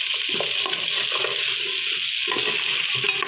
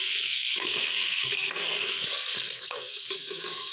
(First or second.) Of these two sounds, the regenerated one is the second